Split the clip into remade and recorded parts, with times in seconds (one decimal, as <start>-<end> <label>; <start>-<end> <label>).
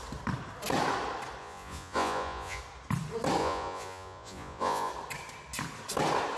0.0-1.4 recorded; 1.4-2.6 remade; 2.6-3.4 recorded; 3.4-4.9 remade; 4.9-6.4 recorded